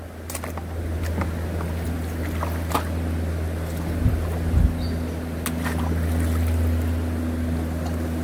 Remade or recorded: recorded